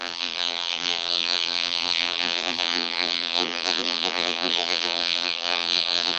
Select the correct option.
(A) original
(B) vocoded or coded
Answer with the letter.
B